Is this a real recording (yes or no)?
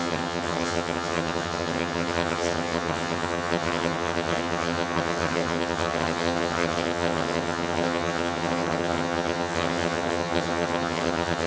no